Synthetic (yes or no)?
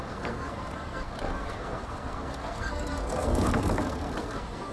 yes